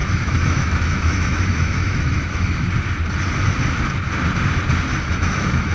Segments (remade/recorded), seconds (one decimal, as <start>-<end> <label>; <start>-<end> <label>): 0.0-2.7 remade; 2.7-4.9 recorded; 4.9-5.7 remade